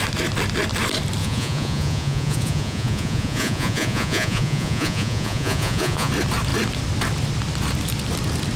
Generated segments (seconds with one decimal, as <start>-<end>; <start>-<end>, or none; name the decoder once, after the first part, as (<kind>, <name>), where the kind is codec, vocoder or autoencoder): 1.2-6.1 (vocoder, Vocos)